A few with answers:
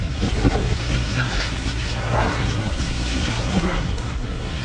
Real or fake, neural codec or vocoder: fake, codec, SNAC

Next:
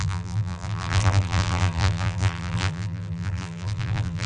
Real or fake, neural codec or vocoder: fake, vocoder, BigVGAN v2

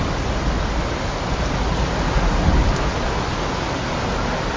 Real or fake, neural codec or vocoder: real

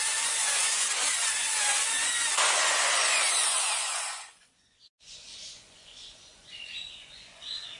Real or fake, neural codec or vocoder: fake, vocoder, Vocos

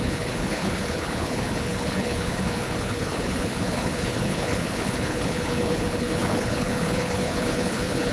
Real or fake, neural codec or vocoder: fake, codec, HILCodec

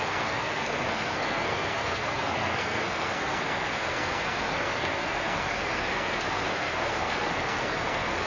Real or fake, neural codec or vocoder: fake, codec, SNAC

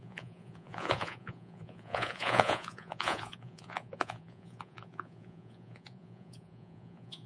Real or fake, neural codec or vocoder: fake, vocoder, Vocos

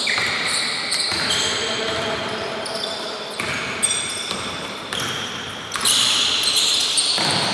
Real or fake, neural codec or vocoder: fake, vocoder, BigVGAN v2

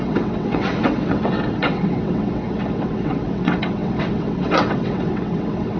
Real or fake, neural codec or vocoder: fake, vocoder, WaveNeXt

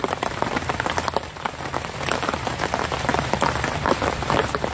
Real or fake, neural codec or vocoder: real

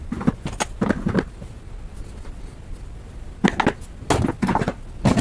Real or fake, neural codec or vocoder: real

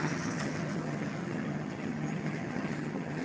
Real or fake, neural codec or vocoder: fake, vocoder, HiFi-GAN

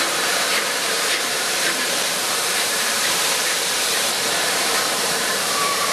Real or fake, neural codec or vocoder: fake, vocoder, BigVGAN v2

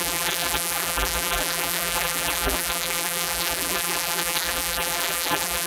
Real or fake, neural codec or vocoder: fake, vocoder, BigVGAN v2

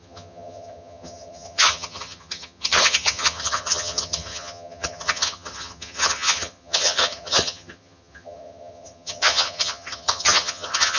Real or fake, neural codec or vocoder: fake, vocoder, HiFi-GAN